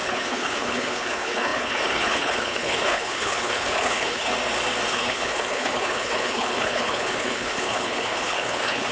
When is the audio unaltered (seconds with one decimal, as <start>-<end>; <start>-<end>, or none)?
4.3-4.9